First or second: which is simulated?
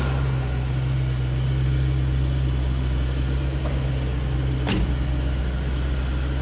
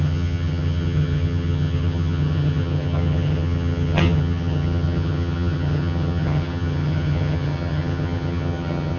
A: second